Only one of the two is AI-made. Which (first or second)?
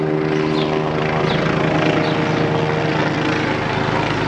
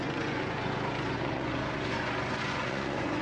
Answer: second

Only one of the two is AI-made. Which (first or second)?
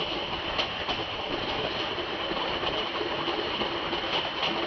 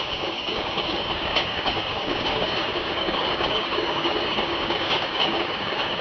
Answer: second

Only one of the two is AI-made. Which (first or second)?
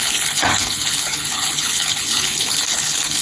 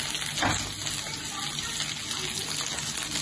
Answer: first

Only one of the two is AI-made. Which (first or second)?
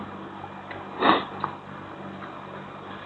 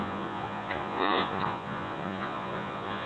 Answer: second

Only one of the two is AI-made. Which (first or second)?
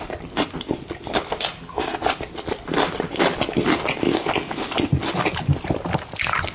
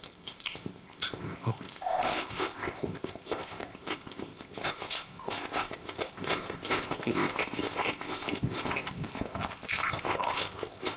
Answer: second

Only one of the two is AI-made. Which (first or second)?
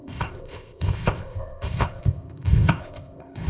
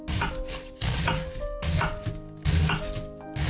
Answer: first